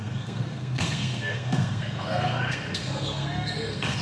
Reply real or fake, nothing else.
fake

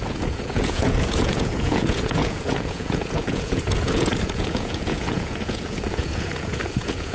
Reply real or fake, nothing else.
fake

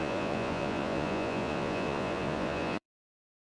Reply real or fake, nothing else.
fake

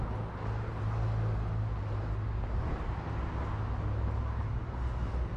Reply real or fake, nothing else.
real